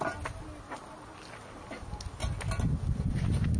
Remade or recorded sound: recorded